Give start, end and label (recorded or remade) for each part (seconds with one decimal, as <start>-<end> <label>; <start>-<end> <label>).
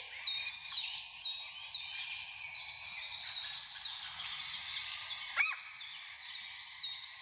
0.0-7.2 recorded